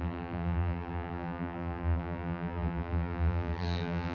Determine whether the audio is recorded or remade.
remade